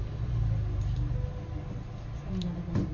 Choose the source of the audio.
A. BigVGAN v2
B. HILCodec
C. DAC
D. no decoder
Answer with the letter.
D